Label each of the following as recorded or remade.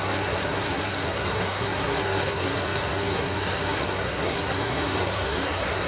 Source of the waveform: remade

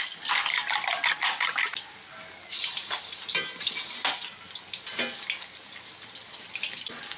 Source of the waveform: recorded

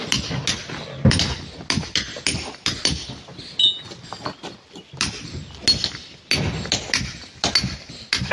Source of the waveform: recorded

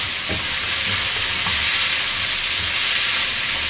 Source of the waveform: recorded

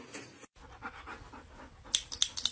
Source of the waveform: recorded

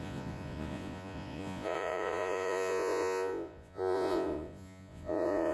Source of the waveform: remade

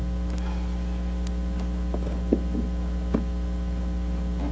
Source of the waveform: recorded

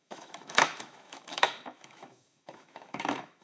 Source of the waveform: remade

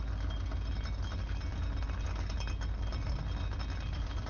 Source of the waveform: recorded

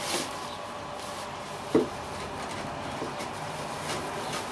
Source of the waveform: recorded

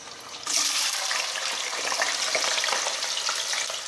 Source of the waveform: recorded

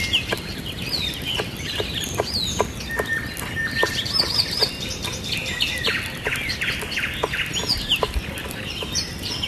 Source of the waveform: recorded